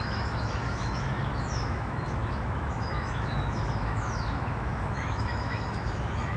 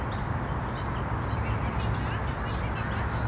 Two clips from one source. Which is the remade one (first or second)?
first